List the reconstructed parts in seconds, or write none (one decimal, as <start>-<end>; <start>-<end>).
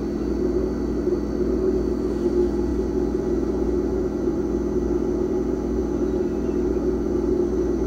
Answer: none